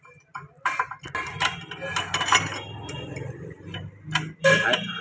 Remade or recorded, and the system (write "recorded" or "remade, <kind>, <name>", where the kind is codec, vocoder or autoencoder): recorded